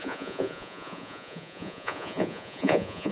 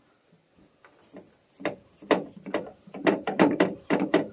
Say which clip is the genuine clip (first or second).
second